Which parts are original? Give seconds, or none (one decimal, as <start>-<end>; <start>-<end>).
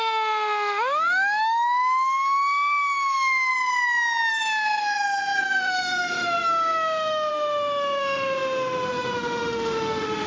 3.5-4.3